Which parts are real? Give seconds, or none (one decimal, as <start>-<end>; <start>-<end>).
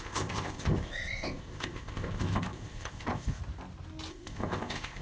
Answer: 3.4-4.1